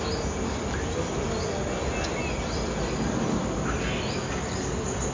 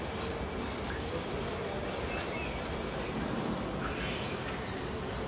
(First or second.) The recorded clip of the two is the first